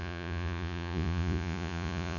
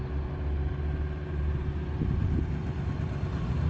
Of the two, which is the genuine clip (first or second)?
second